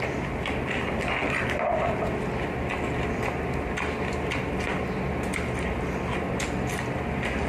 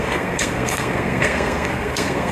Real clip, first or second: first